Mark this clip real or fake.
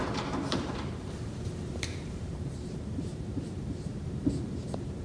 fake